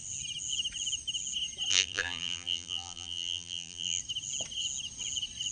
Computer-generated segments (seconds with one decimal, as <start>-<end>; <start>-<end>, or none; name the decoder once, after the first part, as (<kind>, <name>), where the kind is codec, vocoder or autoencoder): 1.7-4.0 (vocoder, BigVGAN v2)